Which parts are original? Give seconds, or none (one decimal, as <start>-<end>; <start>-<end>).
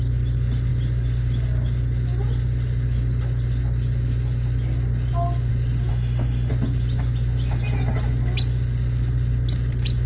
0.0-5.9; 6.5-10.1